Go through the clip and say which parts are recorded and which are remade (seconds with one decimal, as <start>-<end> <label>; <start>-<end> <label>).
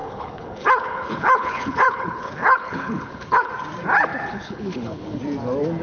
0.0-3.5 remade; 3.5-4.3 recorded; 4.3-5.2 remade; 5.2-5.8 recorded